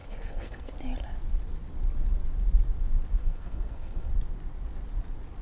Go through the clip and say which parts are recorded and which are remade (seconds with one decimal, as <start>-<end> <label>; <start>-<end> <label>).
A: 0.0-0.7 remade; 0.7-3.2 recorded; 3.2-4.1 remade; 4.1-5.4 recorded